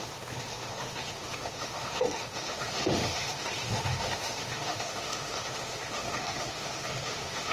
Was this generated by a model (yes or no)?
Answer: yes